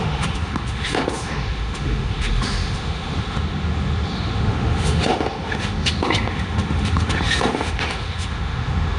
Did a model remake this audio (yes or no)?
yes